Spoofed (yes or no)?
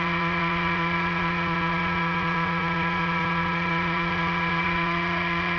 yes